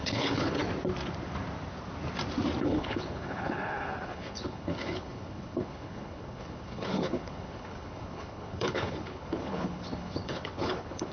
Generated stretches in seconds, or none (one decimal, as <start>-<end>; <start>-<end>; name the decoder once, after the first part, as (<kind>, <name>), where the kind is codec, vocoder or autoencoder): 0.0-0.6 (codec, HILCodec); 2.6-11.1